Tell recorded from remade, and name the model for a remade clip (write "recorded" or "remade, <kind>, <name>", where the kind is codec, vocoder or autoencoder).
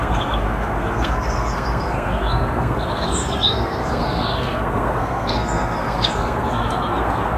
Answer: remade, codec, SNAC